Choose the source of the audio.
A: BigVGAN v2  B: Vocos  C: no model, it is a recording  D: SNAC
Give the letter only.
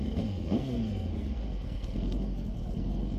D